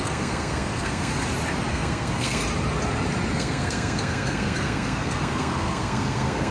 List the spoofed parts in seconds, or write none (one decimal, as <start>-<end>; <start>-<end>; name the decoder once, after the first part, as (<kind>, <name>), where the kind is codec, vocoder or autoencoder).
0.0-1.1 (codec, SNAC); 1.7-2.4; 3.3-6.5

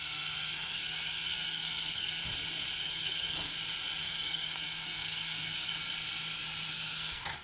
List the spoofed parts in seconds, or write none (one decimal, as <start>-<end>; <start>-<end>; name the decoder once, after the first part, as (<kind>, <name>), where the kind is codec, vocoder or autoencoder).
0.0-2.2 (codec, SNAC); 2.8-3.5; 4.0-5.7; 6.7-7.4

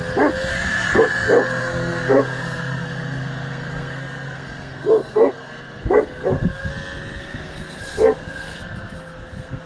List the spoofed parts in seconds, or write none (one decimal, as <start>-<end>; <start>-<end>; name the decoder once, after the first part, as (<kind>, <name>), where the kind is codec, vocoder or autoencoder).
0.5-1.1 (codec, SNAC); 1.6-6.7; 7.2-9.7